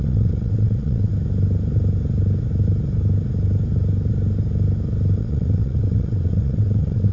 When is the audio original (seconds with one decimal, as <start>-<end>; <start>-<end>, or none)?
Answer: 1.1-5.2